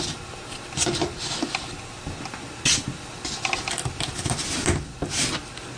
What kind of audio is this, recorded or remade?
recorded